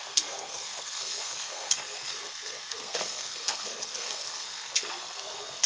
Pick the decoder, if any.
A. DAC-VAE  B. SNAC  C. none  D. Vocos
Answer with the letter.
B